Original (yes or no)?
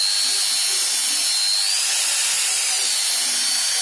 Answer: yes